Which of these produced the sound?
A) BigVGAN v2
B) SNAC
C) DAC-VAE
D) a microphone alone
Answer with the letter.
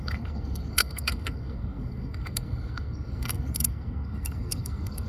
B